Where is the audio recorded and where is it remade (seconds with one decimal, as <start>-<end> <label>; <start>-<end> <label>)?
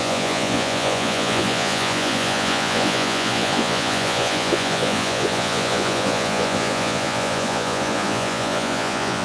0.0-9.2 remade